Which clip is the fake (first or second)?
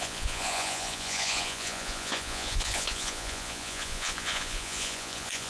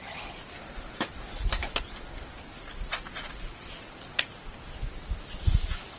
first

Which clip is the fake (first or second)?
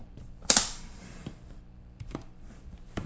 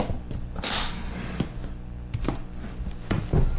first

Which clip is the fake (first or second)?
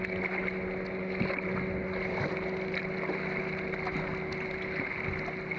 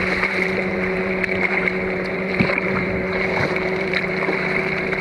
second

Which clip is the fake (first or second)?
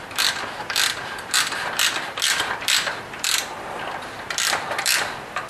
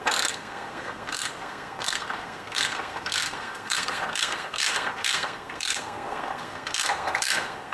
second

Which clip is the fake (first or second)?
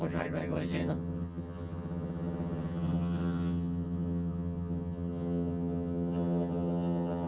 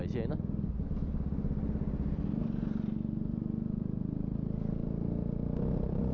first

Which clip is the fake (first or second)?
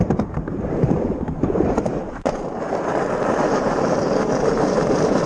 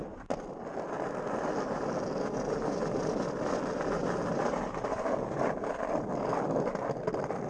first